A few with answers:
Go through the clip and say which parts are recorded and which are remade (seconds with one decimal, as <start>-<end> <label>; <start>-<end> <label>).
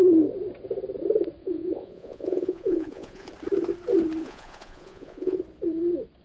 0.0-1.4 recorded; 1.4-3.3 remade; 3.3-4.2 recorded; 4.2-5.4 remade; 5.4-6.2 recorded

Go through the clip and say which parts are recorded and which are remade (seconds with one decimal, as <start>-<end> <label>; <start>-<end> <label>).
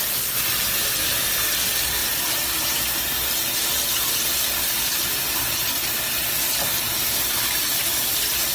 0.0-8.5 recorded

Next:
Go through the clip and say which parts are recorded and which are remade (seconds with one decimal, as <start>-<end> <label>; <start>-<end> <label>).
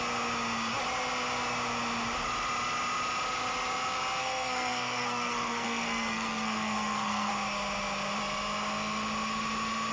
0.0-4.2 recorded; 4.2-7.3 remade; 7.3-9.9 recorded